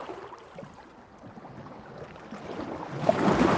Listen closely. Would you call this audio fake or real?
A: real